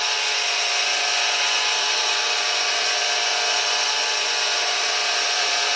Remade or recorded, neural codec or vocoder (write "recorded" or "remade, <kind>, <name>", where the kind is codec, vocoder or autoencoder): remade, vocoder, Vocos